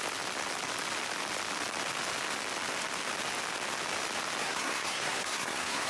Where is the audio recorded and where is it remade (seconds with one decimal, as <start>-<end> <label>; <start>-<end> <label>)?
0.0-4.4 recorded; 4.4-5.9 remade